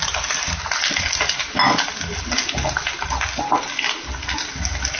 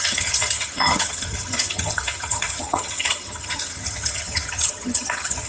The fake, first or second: second